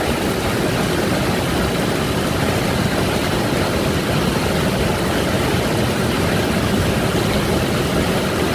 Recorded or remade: recorded